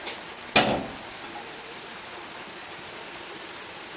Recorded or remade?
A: recorded